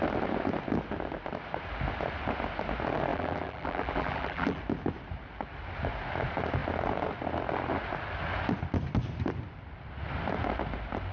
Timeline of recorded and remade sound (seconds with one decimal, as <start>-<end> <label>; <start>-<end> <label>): 0.0-3.1 recorded; 3.1-4.6 remade; 4.6-11.1 recorded